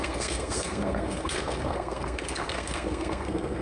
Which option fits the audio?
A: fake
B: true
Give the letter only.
A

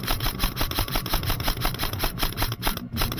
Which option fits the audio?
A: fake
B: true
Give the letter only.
A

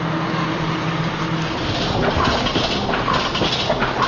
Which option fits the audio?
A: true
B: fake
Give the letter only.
A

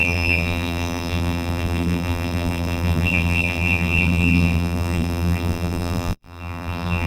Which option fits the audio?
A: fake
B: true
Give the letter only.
A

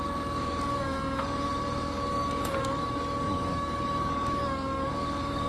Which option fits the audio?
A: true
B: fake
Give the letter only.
B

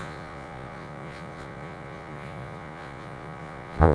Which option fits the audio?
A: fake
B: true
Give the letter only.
A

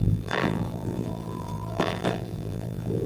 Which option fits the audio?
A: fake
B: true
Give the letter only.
A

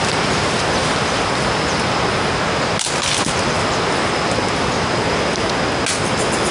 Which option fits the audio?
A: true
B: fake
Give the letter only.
A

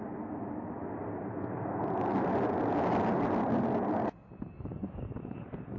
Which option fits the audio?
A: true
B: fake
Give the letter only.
A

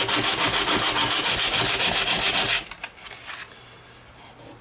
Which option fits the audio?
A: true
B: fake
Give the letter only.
A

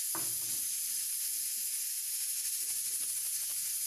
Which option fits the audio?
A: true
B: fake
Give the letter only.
A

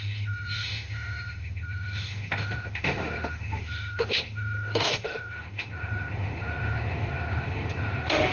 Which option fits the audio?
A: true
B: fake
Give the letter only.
B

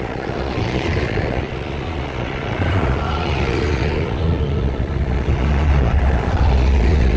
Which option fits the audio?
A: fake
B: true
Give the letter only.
A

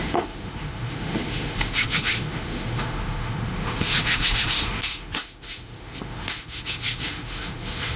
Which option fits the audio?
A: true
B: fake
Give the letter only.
B